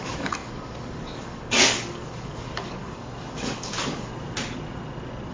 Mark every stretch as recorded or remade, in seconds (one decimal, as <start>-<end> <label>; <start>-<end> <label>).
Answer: 0.0-4.1 remade; 4.1-5.3 recorded